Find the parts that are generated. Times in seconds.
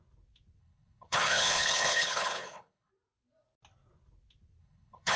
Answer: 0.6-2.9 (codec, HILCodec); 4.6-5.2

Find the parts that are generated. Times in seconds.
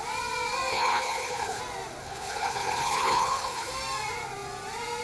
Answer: 0.7-1.6 (codec, HILCodec); 2.0-3.7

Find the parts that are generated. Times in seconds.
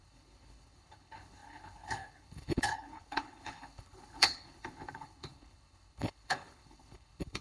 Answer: 0.0-7.4 (codec, HILCodec)